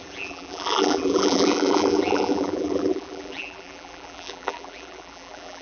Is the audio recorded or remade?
remade